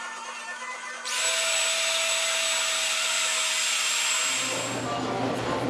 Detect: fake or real real